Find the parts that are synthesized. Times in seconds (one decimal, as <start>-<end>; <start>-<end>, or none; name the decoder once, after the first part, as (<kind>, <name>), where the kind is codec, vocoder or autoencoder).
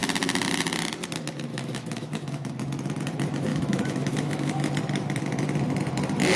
1.5-2.5 (autoencoder, DAC-VAE); 3.5-4.7